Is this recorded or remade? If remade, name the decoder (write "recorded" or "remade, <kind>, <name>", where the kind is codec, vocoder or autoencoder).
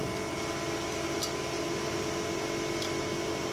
recorded